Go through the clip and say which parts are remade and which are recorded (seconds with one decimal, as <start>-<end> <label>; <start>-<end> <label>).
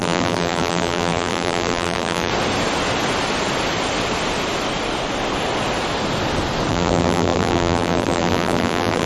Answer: 0.0-2.3 remade; 2.3-6.7 recorded; 6.7-9.1 remade